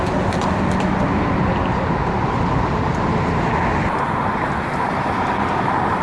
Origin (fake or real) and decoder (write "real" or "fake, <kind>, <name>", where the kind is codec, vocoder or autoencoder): real